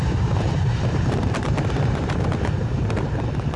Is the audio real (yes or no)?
no